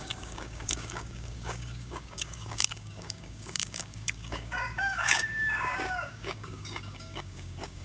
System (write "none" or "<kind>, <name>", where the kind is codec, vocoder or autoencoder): codec, DAC